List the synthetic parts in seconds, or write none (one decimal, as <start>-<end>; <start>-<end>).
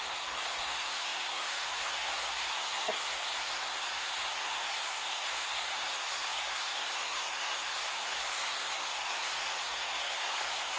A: 0.0-10.8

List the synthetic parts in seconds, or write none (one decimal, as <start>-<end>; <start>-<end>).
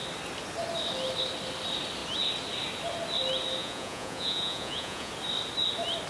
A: 3.6-5.1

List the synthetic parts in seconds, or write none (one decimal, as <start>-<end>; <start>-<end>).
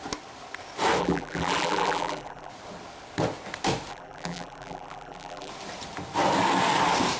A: 1.0-2.5; 3.9-5.5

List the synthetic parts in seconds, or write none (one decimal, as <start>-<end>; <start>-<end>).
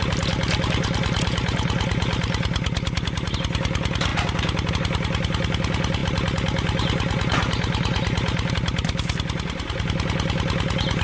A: none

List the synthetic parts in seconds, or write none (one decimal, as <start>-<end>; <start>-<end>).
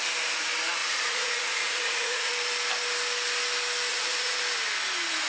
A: 0.8-2.3; 3.9-4.4